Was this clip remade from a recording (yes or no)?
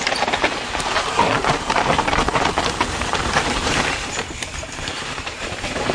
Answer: yes